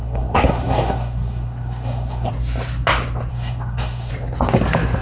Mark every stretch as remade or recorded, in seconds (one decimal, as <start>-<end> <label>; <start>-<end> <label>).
0.0-2.3 remade; 2.3-3.3 recorded; 3.3-4.1 remade; 4.1-5.0 recorded